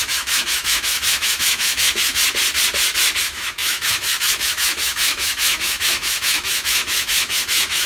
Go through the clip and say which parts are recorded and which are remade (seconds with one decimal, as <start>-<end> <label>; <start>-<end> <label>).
0.0-2.2 remade; 2.2-3.2 recorded; 3.2-7.9 remade

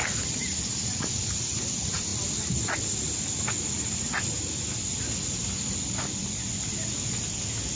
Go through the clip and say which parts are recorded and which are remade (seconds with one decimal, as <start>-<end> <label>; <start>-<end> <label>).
0.0-7.8 recorded

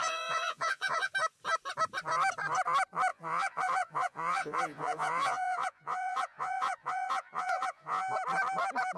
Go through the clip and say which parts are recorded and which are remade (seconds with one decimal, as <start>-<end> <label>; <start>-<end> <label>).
0.0-1.1 remade; 1.1-3.1 recorded; 3.1-8.0 remade; 8.0-9.0 recorded

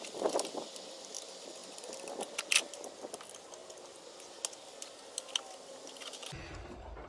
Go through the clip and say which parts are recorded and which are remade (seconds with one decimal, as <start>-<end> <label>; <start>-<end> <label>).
0.0-7.1 recorded

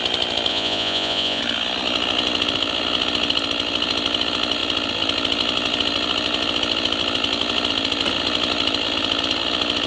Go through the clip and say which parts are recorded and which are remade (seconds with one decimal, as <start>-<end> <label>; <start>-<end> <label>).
0.0-0.5 recorded; 0.5-1.4 remade; 1.4-9.9 recorded

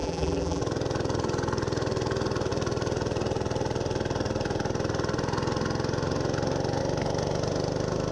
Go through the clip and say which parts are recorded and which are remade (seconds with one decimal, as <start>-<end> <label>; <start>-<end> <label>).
0.0-0.6 remade; 0.6-8.1 recorded

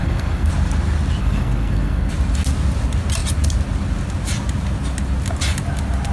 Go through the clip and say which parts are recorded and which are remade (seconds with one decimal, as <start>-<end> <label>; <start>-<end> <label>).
0.0-0.5 remade; 0.5-1.2 recorded; 1.2-2.1 remade; 2.1-6.1 recorded